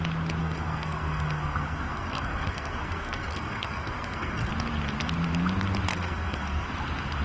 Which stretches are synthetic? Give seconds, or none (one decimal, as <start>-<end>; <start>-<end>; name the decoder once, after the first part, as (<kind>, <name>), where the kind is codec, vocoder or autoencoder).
0.4-4.5 (codec, SNAC); 5.9-6.7